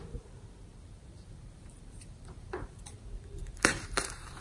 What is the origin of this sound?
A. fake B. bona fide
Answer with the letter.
A